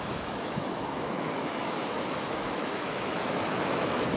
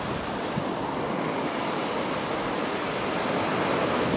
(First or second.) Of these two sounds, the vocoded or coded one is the first